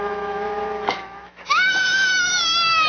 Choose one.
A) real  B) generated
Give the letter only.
B